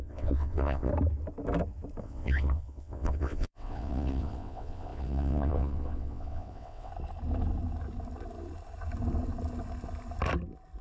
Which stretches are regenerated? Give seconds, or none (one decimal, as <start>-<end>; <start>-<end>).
0.0-0.9; 2.0-6.9